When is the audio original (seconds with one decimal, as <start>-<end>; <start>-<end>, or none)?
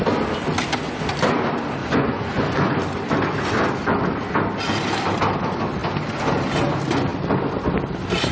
0.0-1.8; 2.7-8.3